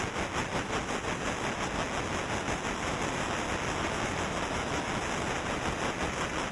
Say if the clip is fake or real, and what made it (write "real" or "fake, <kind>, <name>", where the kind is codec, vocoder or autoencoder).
real